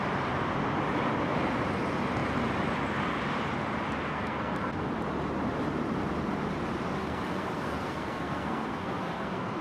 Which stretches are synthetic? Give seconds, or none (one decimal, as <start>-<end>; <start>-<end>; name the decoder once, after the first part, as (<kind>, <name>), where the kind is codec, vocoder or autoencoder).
4.1-4.9 (codec, SNAC); 7.0-9.6